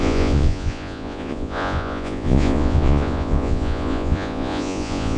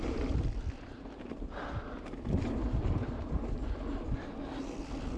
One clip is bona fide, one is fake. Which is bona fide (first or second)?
second